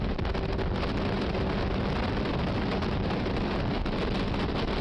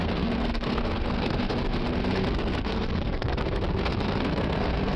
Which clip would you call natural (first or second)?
first